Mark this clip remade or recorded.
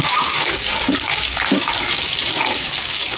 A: remade